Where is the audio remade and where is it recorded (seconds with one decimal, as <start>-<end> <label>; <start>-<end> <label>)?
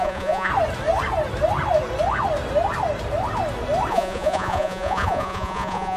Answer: 0.0-0.5 remade; 0.5-3.9 recorded; 3.9-6.0 remade